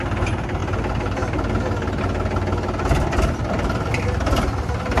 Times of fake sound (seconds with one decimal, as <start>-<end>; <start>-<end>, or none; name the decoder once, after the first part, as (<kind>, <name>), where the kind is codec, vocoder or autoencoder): none

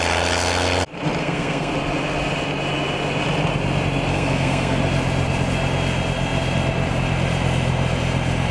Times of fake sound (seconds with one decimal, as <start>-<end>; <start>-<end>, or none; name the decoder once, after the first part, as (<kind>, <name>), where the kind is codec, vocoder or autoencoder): 1.2-1.7 (codec, SNAC); 4.1-4.8

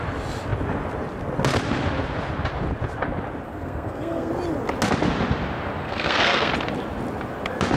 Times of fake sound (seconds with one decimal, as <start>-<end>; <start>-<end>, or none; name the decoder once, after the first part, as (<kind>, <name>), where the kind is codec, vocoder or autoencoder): 3.5-4.3 (codec, SNAC); 5.8-6.5